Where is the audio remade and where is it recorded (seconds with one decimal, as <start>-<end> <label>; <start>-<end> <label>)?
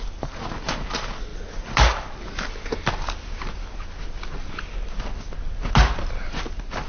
0.0-6.9 recorded